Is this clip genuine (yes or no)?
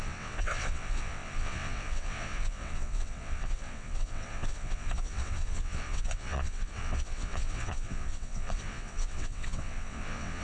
no